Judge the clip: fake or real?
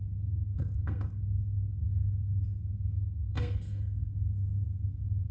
fake